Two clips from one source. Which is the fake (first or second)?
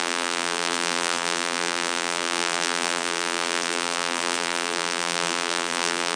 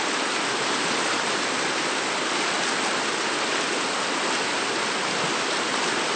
first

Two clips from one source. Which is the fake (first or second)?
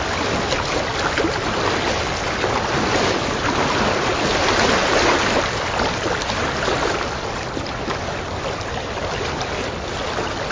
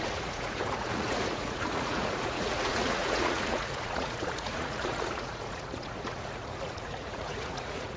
second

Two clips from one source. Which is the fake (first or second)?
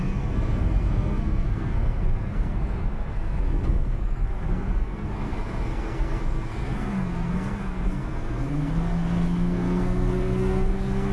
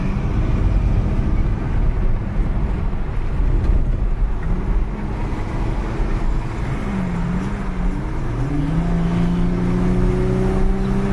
first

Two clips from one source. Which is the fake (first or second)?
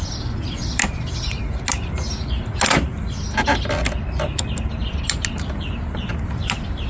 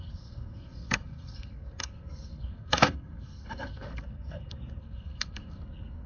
second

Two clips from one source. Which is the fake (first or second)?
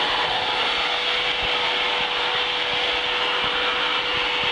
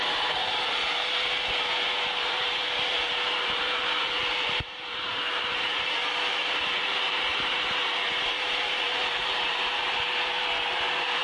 second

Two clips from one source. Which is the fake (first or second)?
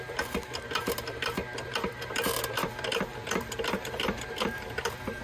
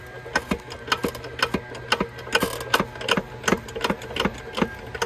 first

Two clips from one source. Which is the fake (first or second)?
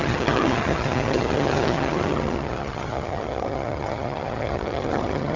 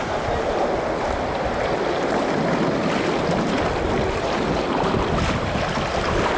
first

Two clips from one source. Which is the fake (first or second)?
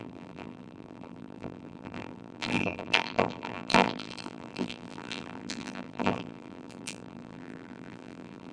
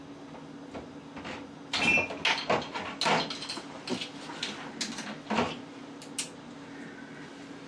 first